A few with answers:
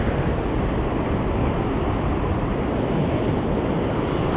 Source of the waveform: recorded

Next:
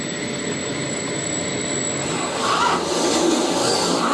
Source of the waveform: recorded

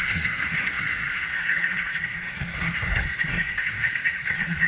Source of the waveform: remade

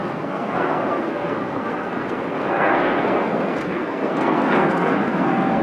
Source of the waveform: remade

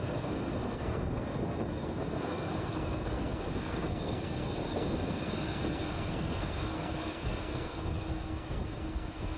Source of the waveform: remade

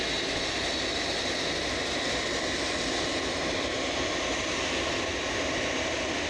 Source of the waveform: recorded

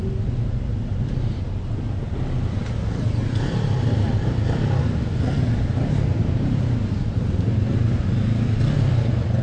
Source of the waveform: recorded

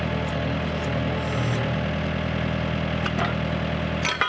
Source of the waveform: recorded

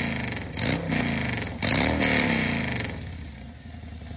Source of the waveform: recorded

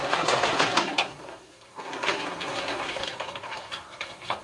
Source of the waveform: remade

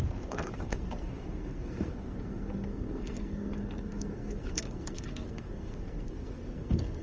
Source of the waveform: remade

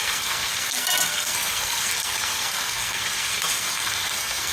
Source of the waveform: remade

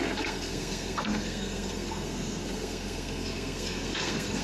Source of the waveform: remade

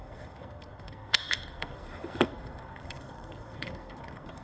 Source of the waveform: remade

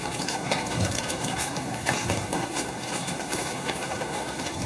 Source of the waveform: remade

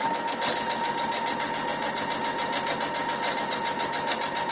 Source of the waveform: recorded